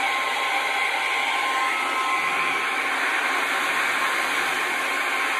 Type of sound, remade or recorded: recorded